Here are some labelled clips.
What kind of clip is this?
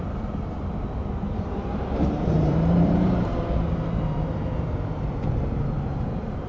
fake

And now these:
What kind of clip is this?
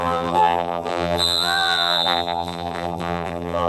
fake